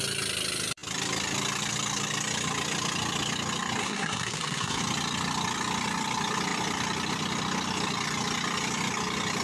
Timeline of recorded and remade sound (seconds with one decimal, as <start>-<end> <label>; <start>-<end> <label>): 0.0-3.8 recorded; 3.8-4.8 remade; 4.8-9.4 recorded